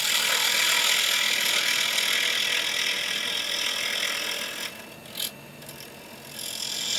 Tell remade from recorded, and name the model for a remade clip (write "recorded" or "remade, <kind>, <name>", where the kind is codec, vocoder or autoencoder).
recorded